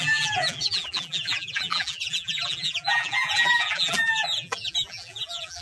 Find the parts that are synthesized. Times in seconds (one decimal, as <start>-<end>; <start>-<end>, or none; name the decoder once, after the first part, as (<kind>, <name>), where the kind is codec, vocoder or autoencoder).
0.0-5.6 (vocoder, BigVGAN v2)